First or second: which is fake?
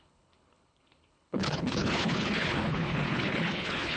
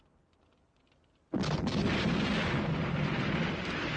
first